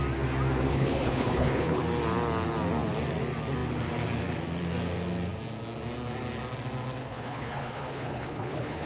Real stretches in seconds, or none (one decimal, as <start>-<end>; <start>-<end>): 0.0-0.7; 1.8-7.0